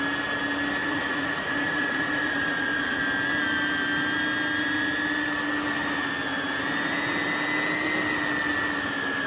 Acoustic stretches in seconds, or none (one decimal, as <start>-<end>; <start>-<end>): 0.0-0.8; 3.0-9.3